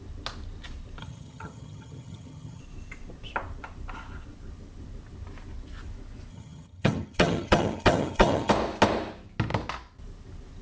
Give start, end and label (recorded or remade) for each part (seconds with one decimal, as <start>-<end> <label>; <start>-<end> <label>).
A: 0.0-1.0 recorded; 1.0-2.6 remade; 2.6-6.3 recorded; 6.3-8.5 remade; 8.5-10.6 recorded